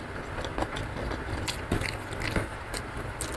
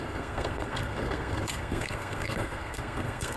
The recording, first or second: first